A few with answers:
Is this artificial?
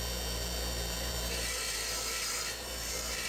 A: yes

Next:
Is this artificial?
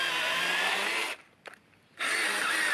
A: no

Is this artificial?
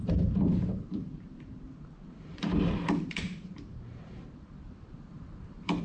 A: yes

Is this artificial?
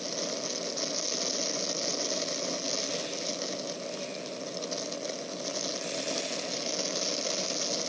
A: no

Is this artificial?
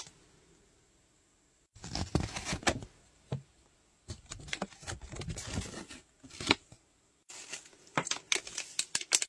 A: no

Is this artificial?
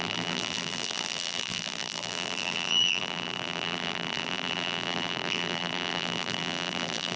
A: yes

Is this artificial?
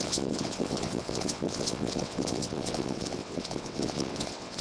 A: yes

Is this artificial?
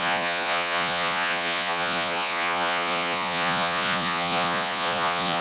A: yes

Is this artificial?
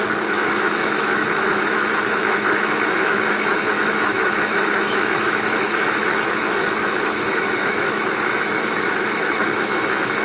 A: yes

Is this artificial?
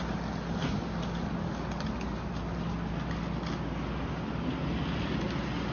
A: no